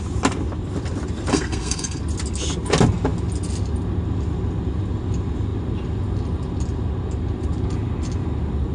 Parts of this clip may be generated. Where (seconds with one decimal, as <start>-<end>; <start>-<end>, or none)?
1.3-2.0